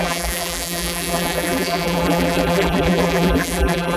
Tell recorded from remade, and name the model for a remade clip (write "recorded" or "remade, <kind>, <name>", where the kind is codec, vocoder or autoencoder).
remade, vocoder, BigVGAN v2